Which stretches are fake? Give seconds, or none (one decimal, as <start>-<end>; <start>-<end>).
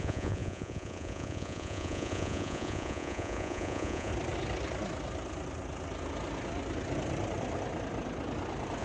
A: 0.0-4.1